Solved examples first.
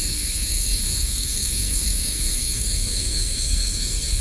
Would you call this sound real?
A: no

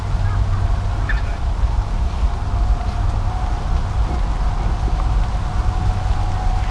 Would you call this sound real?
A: yes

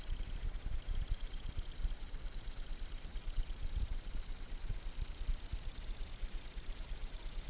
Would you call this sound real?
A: yes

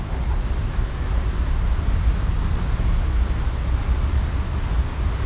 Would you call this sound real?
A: yes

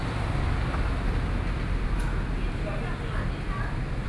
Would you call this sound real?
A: yes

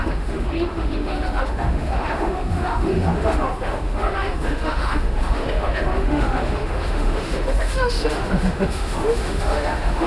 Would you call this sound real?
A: no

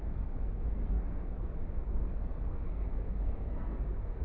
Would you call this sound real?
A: no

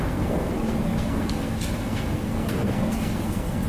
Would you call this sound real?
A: no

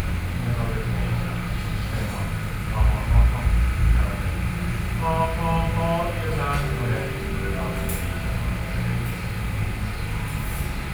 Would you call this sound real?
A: yes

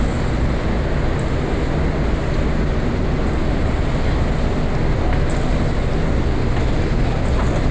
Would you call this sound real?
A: yes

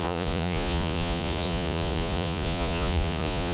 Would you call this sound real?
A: no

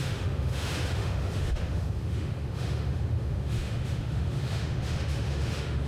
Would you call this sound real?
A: no